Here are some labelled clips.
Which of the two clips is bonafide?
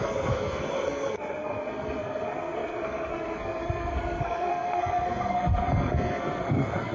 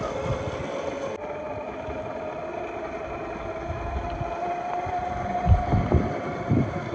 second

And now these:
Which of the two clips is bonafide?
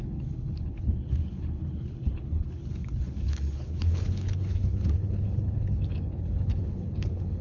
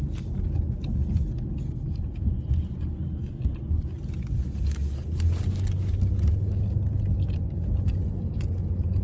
second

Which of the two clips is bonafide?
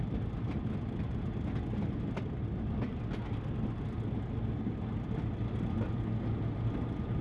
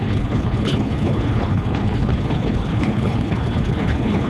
first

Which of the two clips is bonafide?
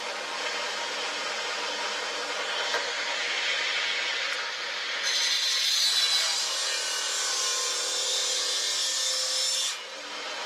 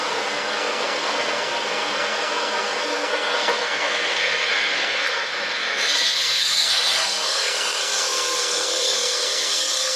first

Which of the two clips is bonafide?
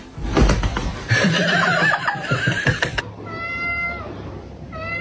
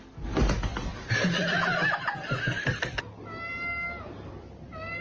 second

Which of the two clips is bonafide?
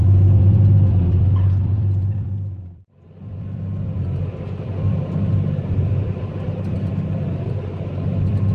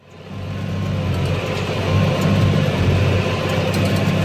second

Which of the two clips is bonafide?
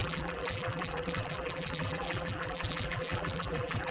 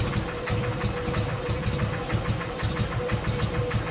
second